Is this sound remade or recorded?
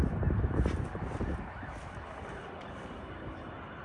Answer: recorded